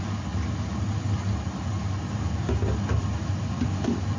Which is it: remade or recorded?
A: recorded